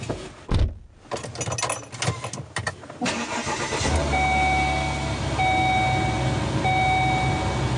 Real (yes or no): yes